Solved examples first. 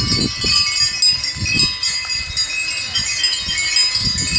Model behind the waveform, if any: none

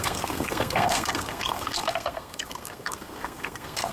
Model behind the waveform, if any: codec, SNAC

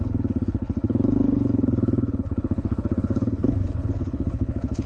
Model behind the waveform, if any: codec, HILCodec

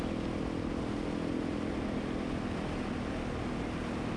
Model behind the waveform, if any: none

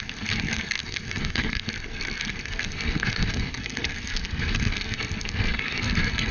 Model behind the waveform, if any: codec, SNAC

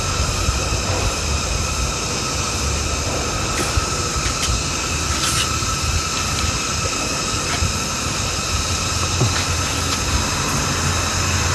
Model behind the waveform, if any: none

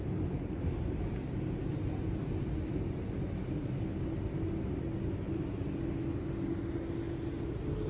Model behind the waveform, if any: none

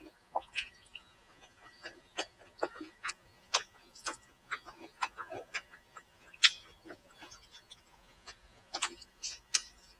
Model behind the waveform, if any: vocoder, Vocos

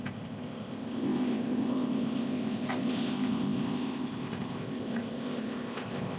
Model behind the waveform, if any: codec, ZipCodec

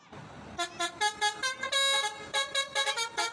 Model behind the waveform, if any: none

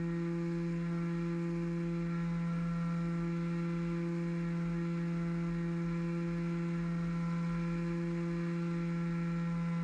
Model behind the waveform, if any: none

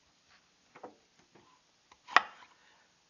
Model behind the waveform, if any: none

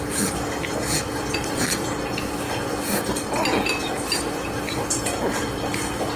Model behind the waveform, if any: none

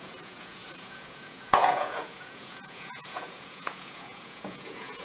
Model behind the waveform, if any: vocoder, Vocos